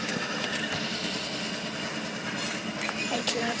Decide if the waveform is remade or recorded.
recorded